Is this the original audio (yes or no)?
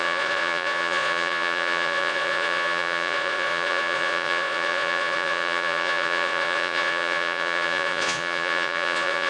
no